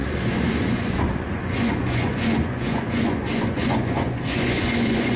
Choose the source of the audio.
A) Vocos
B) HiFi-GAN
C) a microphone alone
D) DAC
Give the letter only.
A